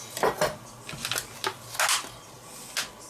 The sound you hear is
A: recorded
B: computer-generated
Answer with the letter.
A